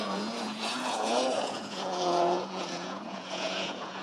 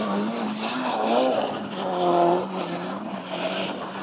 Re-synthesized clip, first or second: first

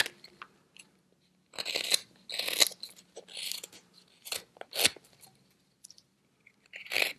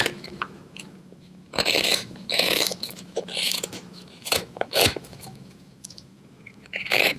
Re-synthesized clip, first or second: second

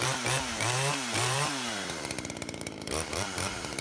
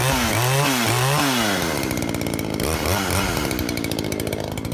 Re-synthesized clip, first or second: first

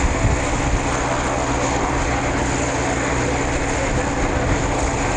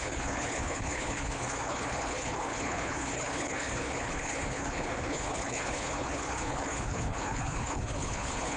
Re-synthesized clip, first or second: second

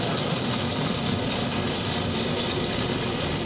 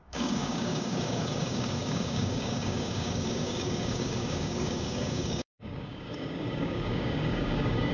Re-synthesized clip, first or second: second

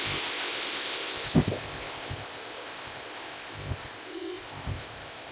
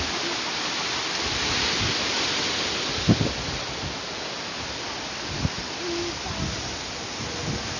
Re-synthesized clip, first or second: first